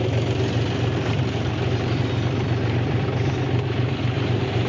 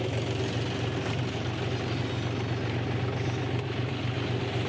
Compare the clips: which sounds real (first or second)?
second